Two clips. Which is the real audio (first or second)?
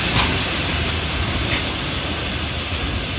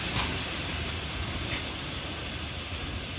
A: first